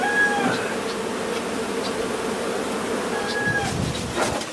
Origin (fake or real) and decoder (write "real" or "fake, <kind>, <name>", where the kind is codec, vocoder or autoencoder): real